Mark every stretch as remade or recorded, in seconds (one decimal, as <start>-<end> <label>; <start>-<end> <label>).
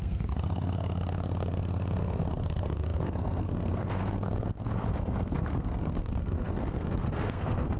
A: 0.0-7.8 remade